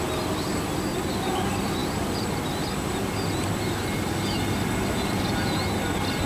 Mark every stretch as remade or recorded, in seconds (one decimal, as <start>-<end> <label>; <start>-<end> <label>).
0.0-1.8 recorded; 1.8-2.5 remade; 2.5-3.9 recorded; 3.9-5.3 remade; 5.3-6.3 recorded